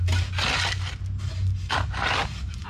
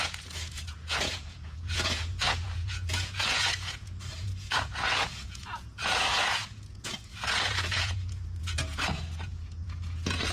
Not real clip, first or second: second